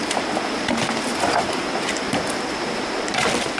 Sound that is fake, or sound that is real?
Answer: real